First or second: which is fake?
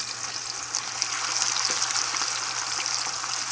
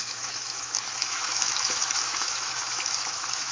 second